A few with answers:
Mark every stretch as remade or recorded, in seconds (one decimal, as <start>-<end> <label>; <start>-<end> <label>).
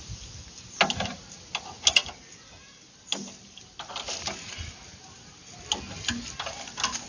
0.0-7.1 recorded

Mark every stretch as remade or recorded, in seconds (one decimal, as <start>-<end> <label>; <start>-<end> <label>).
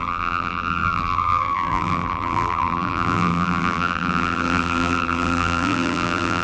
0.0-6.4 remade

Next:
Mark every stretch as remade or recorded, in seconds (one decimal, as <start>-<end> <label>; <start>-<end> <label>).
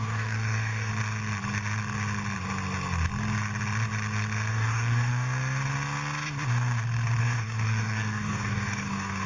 0.0-0.9 remade; 0.9-4.5 recorded; 4.5-5.1 remade; 5.1-7.2 recorded; 7.2-9.3 remade